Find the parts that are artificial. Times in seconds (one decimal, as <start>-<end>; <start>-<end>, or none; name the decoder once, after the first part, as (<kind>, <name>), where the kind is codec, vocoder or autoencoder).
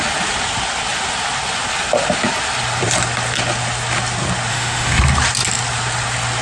4.5-5.0 (autoencoder, DAC-VAE)